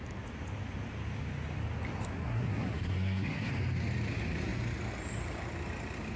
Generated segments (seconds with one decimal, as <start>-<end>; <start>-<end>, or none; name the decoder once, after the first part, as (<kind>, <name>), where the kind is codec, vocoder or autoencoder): 2.1-3.5 (codec, SNAC)